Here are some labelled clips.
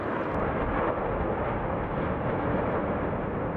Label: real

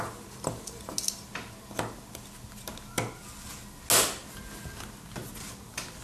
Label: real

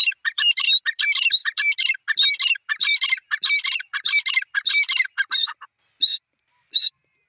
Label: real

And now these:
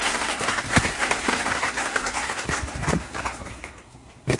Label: fake